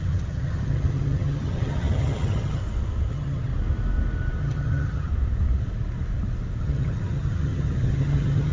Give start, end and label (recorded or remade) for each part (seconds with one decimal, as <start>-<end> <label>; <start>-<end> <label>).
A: 0.0-2.6 remade; 2.6-3.1 recorded; 3.1-3.5 remade; 3.5-4.4 recorded; 4.4-5.1 remade; 5.1-6.6 recorded; 6.6-8.5 remade